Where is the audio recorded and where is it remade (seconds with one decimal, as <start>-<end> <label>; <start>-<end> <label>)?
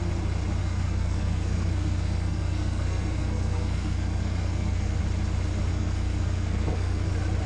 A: 0.0-0.6 recorded; 0.6-5.0 remade; 5.0-5.7 recorded; 5.7-7.1 remade; 7.1-7.5 recorded